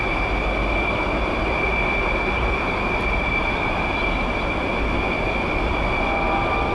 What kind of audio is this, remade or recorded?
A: recorded